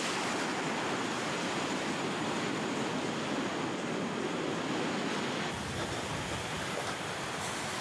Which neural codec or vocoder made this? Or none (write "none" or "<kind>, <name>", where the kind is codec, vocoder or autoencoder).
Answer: none